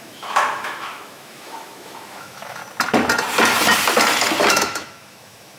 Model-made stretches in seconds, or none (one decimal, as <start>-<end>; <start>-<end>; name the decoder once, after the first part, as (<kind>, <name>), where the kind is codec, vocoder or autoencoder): 0.0-2.6 (autoencoder, DAC-VAE); 4.4-5.6